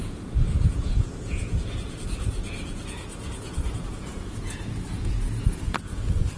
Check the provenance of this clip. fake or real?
fake